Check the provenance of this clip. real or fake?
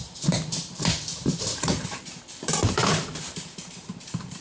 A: fake